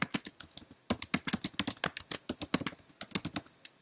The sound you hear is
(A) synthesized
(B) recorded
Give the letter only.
B